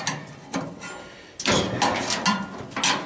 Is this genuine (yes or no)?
yes